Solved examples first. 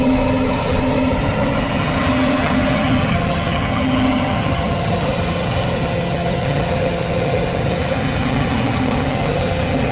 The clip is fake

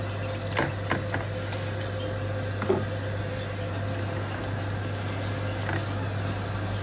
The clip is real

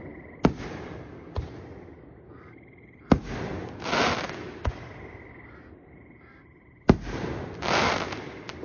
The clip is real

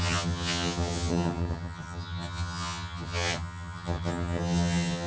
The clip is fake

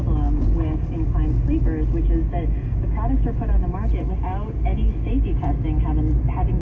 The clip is real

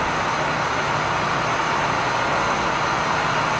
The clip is real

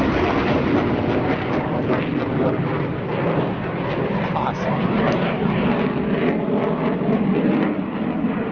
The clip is real